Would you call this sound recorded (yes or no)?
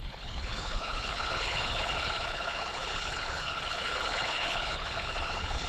no